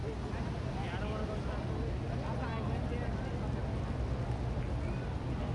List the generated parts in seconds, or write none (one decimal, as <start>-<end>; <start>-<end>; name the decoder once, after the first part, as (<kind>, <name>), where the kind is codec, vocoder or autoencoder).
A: none